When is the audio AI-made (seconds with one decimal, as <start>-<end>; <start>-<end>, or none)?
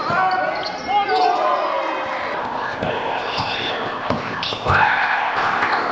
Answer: 2.4-5.9